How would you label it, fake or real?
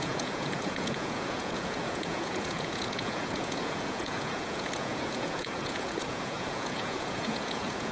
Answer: fake